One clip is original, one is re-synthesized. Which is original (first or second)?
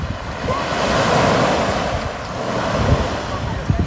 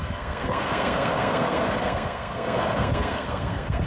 first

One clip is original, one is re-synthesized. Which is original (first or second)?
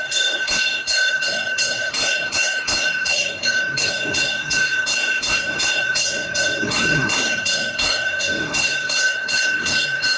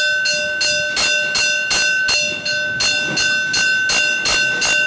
second